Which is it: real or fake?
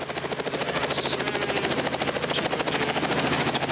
real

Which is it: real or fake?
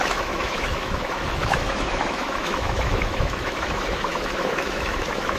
fake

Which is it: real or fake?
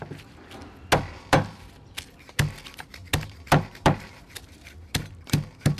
real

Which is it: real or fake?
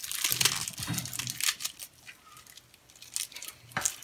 real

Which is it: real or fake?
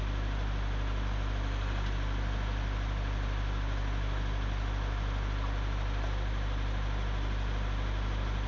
real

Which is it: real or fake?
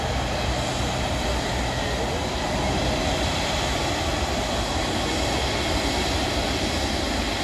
real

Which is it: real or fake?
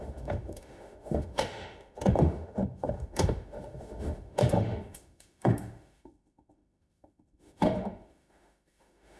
fake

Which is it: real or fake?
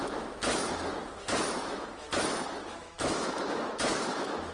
fake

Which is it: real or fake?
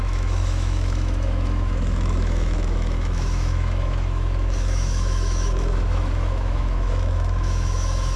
fake